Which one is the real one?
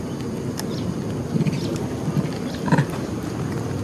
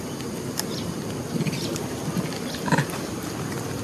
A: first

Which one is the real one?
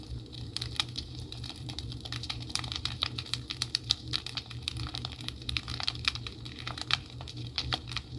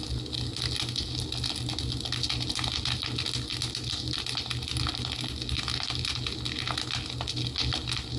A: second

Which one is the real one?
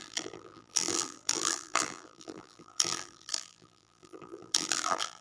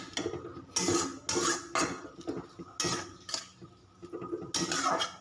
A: second